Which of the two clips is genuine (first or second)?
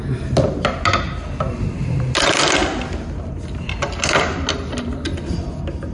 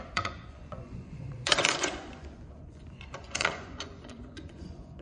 first